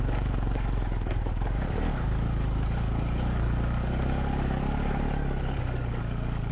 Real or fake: fake